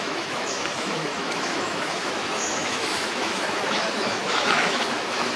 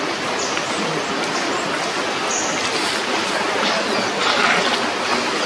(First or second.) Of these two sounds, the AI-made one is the first